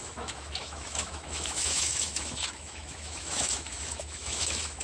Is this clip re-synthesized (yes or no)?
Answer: yes